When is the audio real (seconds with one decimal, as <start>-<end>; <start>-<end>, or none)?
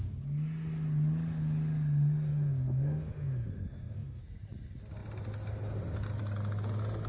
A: 0.0-2.3; 4.2-7.1